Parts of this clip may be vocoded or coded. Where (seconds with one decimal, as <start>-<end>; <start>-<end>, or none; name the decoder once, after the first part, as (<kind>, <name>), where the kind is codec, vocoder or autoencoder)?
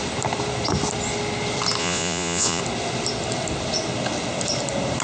1.8-2.6 (vocoder, Vocos)